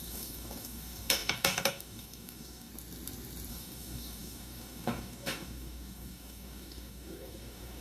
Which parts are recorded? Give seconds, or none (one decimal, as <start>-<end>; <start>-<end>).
2.7-3.5